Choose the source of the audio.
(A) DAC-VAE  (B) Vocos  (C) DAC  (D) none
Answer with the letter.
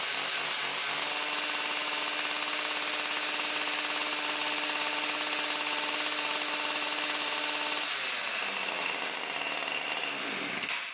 D